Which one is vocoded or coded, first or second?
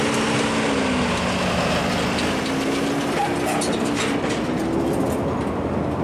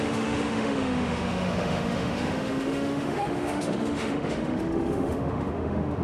second